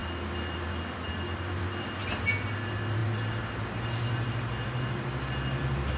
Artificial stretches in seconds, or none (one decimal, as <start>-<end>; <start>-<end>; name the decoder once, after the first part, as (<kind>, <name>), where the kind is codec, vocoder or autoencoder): none